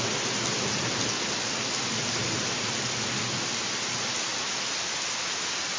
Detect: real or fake real